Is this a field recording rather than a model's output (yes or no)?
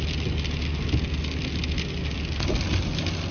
yes